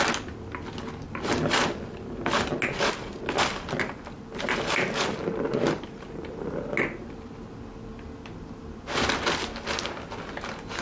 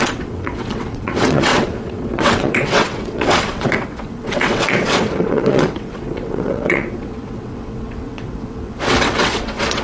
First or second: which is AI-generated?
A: second